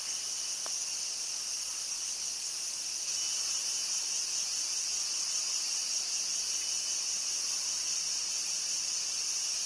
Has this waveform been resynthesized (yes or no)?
no